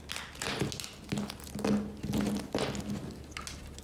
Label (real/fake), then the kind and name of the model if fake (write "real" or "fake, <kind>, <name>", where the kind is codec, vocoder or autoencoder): real